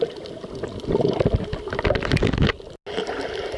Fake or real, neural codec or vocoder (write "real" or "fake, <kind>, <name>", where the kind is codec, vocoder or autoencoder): real